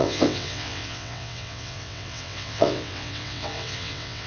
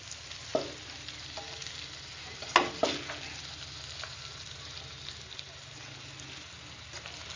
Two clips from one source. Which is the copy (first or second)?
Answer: first